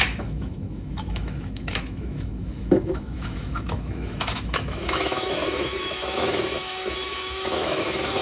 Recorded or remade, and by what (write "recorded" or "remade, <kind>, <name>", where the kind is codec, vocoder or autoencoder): remade, autoencoder, DAC-VAE